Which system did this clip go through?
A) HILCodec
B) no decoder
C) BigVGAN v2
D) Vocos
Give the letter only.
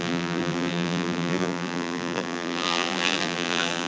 C